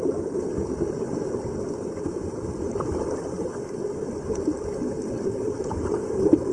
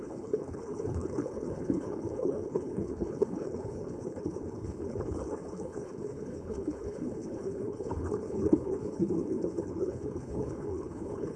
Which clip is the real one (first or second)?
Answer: first